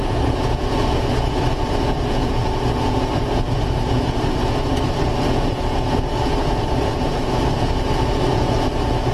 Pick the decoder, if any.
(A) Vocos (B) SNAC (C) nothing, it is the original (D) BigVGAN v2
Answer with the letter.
A